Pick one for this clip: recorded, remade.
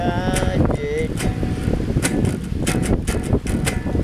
recorded